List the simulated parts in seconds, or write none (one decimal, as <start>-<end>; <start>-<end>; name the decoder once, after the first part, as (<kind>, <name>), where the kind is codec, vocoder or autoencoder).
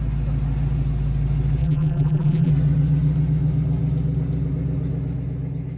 1.6-2.5 (vocoder, BigVGAN v2)